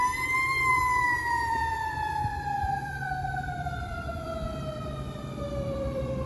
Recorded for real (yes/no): no